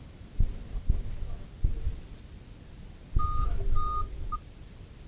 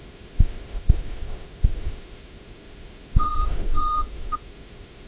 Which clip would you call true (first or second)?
first